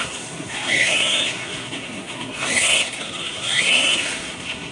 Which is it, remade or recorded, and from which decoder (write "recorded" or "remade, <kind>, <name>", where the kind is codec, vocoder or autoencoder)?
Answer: remade, codec, SNAC